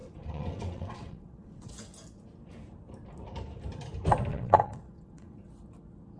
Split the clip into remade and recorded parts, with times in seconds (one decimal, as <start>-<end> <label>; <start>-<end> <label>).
0.0-1.7 remade; 1.7-4.3 recorded; 4.3-5.5 remade; 5.5-6.2 recorded